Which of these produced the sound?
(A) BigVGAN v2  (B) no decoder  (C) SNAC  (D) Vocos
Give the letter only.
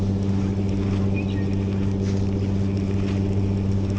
B